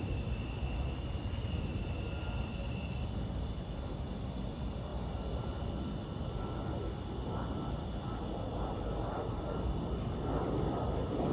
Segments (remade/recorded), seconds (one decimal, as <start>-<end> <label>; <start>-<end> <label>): 0.0-11.3 recorded